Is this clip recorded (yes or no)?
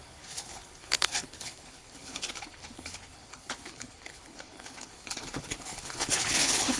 no